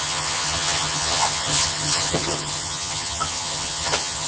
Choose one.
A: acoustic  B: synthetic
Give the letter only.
B